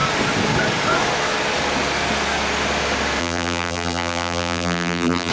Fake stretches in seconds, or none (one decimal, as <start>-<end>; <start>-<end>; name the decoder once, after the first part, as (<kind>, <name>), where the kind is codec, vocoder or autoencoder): 3.2-5.3 (vocoder, BigVGAN v2)